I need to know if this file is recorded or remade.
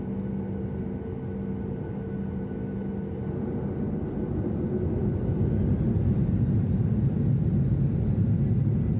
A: recorded